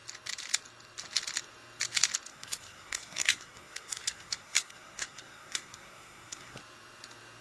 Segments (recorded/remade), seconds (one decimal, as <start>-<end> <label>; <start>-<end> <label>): 0.0-2.3 recorded; 2.3-6.6 remade; 6.6-7.4 recorded